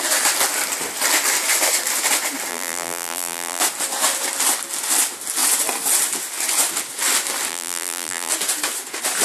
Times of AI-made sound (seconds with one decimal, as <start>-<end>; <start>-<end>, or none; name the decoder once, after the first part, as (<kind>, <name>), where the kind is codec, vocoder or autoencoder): 2.5-3.6 (vocoder, BigVGAN v2); 7.5-8.3